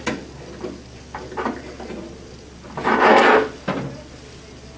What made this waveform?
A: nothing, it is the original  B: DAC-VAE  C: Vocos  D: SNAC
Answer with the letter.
A